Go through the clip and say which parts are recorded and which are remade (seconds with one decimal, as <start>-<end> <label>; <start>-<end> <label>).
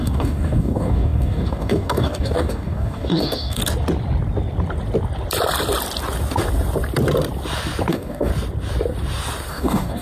0.0-3.6 remade; 3.6-7.9 recorded; 7.9-8.3 remade; 8.3-9.5 recorded; 9.5-10.0 remade